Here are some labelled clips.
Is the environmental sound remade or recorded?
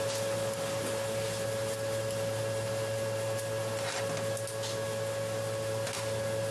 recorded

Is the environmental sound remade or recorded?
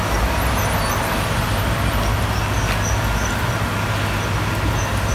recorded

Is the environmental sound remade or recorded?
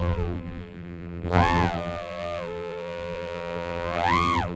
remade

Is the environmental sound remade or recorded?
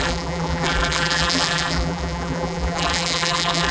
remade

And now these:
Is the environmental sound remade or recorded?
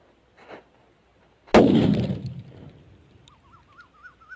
recorded